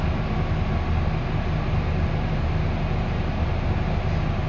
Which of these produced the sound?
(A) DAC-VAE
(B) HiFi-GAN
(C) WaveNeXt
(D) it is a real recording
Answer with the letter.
D